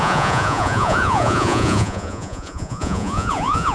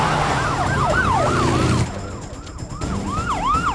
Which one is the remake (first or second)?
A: first